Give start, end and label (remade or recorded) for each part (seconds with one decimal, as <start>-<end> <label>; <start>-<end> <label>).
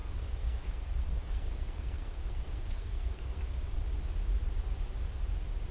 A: 0.0-3.4 remade; 3.4-5.7 recorded